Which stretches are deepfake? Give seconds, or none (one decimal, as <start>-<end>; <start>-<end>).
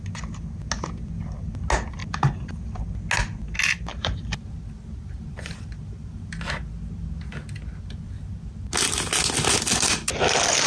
2.0-2.8; 3.9-6.3